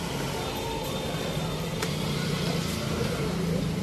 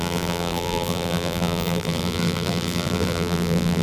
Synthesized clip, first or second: second